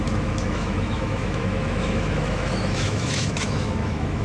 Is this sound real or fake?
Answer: fake